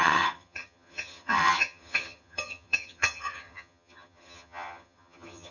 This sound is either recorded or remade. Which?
remade